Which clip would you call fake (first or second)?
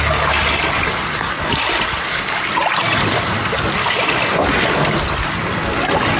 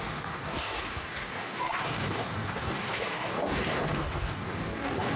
second